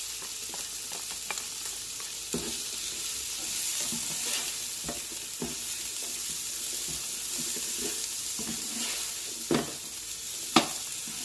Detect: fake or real real